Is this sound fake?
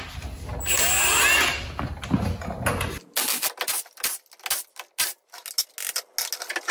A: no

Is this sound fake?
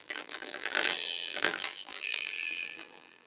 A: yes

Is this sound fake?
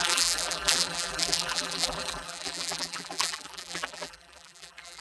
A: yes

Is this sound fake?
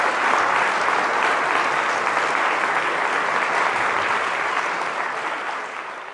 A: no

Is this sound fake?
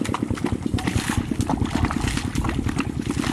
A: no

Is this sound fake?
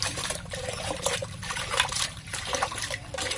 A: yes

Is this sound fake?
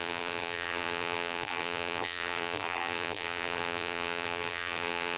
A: yes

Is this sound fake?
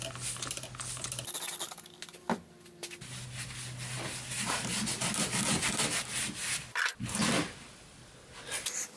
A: no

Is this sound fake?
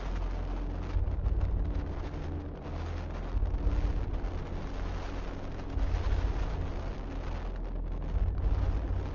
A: no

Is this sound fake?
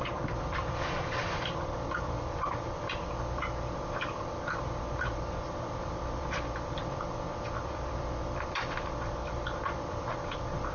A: yes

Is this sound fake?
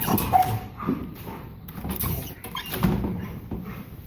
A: no